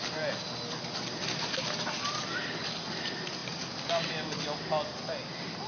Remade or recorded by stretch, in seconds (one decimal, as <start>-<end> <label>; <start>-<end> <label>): 0.0-5.7 recorded